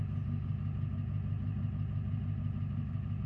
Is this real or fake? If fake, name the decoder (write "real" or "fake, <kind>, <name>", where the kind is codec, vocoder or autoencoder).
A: real